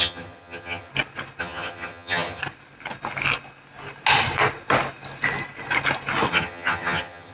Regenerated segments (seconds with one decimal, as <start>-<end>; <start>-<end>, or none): 0.0-0.9; 1.4-2.4; 6.3-7.3